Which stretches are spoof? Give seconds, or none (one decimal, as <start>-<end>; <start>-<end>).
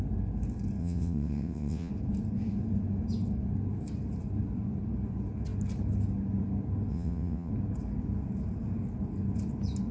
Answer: 0.8-1.9; 6.9-7.5